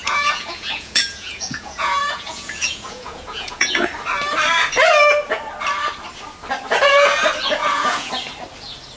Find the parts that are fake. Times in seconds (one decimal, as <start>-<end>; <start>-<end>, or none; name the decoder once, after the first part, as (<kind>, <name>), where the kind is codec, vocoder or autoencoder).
0.0-3.9 (vocoder, Vocos); 7.6-8.1